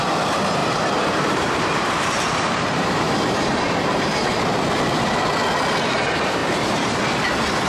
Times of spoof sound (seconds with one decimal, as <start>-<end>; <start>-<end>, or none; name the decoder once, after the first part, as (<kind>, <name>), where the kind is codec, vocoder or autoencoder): 0.6-4.4 (vocoder, BigVGAN v2); 6.4-7.0

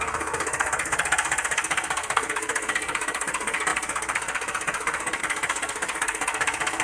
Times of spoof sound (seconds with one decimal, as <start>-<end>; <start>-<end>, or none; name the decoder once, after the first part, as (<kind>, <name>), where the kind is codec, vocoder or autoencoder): 0.0-6.8 (codec, SNAC)

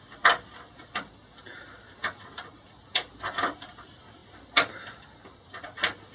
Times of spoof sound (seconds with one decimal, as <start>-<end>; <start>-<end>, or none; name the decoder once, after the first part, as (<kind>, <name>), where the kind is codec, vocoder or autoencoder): none

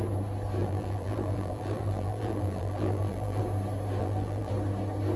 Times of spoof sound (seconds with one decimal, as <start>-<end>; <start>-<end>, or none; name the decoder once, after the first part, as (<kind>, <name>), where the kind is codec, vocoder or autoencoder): 0.6-3.4 (vocoder, BigVGAN v2); 4.0-4.5

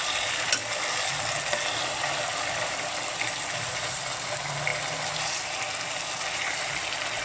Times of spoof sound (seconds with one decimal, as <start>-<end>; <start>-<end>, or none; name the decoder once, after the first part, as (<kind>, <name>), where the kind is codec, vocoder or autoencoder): 0.0-0.6 (vocoder, BigVGAN v2); 1.9-4.7; 6.6-7.2